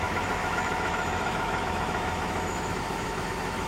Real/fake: fake